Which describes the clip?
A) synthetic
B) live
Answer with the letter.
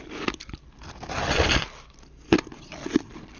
B